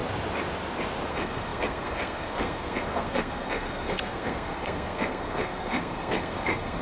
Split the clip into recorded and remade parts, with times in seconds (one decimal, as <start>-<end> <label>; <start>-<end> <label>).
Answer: 0.0-1.1 recorded; 1.1-6.8 remade